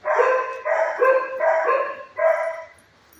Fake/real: real